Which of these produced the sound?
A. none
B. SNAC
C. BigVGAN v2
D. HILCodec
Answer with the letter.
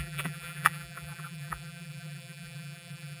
C